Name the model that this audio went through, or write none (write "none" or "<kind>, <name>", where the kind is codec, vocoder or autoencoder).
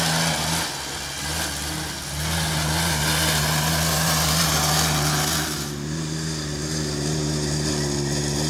none